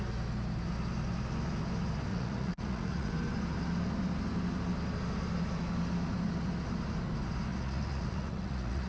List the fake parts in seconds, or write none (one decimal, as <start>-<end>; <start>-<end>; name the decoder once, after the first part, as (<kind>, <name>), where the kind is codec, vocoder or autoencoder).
2.1-3.1 (vocoder, Vocos); 7.5-8.9